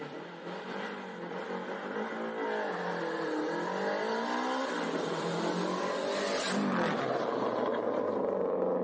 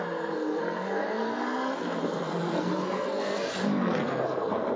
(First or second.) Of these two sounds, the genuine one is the first